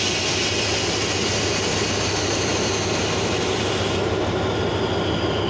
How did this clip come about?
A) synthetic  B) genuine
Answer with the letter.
B